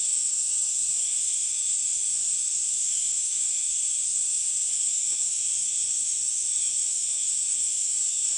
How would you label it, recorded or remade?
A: remade